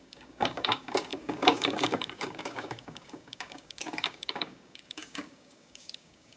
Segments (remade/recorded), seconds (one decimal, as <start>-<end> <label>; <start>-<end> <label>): 0.0-6.4 remade